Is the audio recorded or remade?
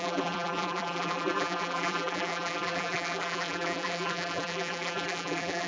remade